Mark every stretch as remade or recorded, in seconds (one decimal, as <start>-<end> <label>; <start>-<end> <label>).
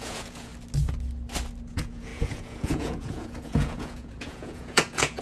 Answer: 0.0-0.5 remade; 0.5-1.7 recorded; 1.7-5.2 remade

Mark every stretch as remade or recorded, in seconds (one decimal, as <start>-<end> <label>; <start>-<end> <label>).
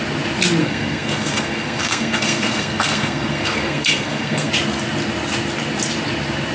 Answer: 0.0-0.6 recorded; 0.6-4.5 remade; 4.5-6.5 recorded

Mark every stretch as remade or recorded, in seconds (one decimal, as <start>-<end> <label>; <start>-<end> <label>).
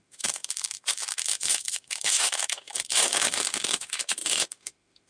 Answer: 0.0-5.1 remade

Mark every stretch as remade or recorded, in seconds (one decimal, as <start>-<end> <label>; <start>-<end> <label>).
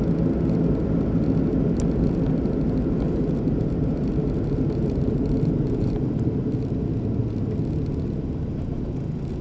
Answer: 0.0-3.8 recorded; 3.8-6.5 remade; 6.5-9.4 recorded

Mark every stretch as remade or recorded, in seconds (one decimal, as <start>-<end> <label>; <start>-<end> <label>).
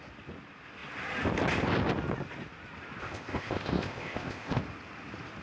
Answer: 0.0-3.0 recorded; 3.0-4.6 remade; 4.6-5.4 recorded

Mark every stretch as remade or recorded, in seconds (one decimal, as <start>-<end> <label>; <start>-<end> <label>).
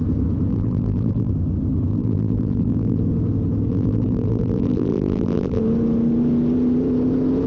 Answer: 0.0-0.5 recorded; 0.5-1.3 remade; 1.3-1.9 recorded; 1.9-3.0 remade; 3.0-3.7 recorded; 3.7-5.6 remade; 5.6-7.5 recorded